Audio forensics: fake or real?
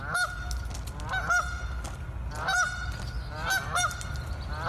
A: real